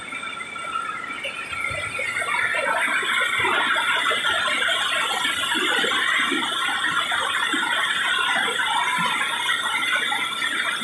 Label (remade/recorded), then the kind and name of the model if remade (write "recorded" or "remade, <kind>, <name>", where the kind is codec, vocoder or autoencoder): recorded